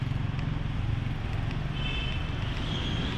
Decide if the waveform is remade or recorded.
recorded